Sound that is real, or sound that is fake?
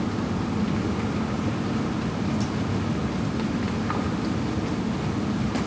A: real